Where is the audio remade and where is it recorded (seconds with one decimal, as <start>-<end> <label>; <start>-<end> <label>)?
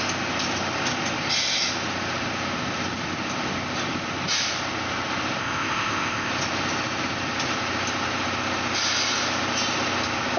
0.0-5.4 recorded; 5.4-6.3 remade; 6.3-10.4 recorded